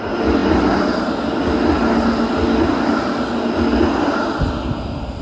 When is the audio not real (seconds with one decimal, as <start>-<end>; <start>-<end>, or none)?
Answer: none